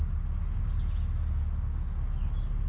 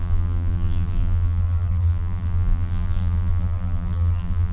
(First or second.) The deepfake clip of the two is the second